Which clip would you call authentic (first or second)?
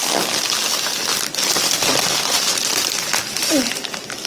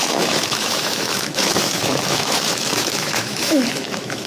first